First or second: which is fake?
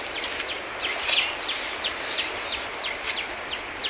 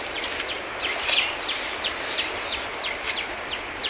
second